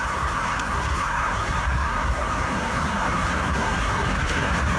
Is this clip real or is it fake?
fake